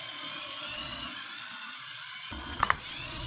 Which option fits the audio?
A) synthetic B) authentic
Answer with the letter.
A